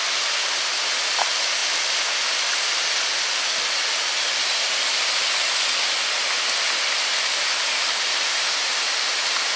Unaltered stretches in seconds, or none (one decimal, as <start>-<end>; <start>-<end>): 0.0-9.6